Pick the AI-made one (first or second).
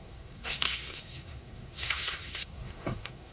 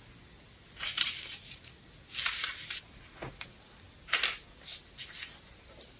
first